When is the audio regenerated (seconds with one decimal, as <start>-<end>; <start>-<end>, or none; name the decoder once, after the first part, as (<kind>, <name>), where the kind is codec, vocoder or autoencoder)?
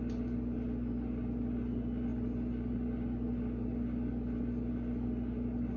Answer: none